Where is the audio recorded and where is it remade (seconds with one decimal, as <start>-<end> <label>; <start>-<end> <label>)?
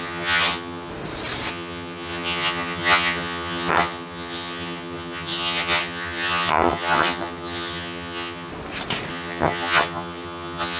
0.0-0.9 remade; 0.9-1.5 recorded; 1.5-8.5 remade; 8.5-9.1 recorded; 9.1-10.8 remade